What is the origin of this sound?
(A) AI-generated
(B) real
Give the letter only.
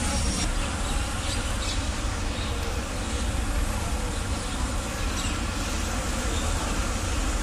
B